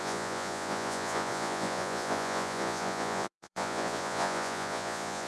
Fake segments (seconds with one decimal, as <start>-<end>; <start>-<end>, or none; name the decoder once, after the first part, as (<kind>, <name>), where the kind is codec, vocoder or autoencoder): 0.0-5.3 (vocoder, Vocos)